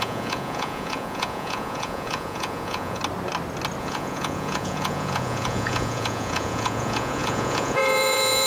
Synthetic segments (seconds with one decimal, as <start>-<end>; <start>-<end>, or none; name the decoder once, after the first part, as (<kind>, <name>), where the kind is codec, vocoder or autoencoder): 0.0-3.0 (vocoder, Vocos); 3.8-8.5